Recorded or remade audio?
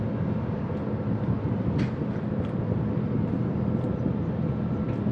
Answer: recorded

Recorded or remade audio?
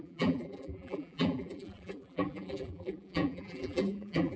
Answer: remade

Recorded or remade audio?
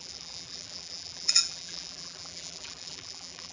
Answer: remade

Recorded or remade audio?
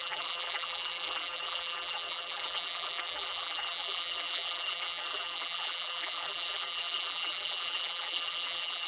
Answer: remade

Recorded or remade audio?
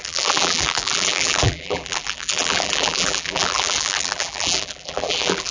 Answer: remade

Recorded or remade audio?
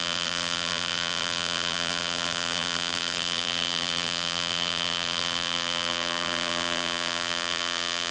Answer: remade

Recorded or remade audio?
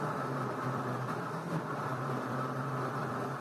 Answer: remade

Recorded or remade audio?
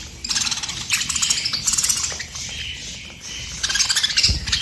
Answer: recorded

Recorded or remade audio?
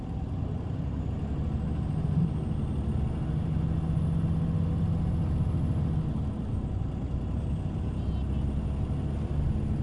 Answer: recorded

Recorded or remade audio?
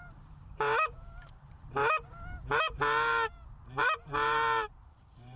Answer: remade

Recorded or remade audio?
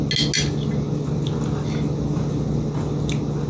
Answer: recorded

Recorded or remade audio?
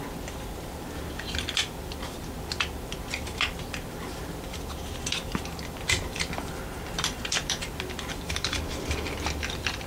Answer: remade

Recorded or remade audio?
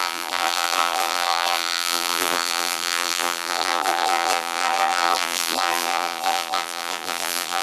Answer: remade